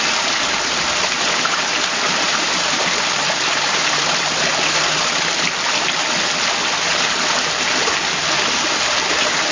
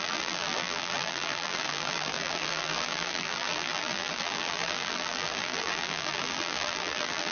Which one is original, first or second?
first